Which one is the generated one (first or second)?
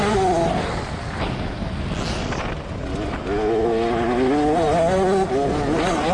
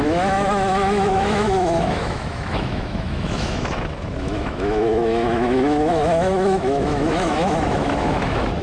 second